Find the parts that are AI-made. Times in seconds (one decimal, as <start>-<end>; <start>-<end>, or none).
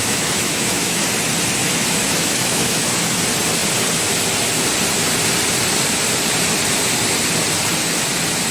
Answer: 0.0-1.0; 1.6-3.2